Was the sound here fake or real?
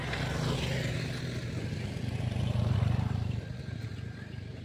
real